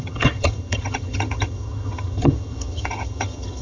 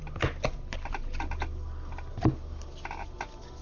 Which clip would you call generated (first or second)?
first